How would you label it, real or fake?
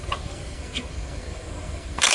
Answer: fake